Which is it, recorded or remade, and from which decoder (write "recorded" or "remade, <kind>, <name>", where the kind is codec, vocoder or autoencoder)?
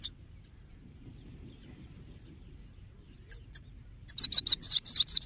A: remade, vocoder, BigVGAN v2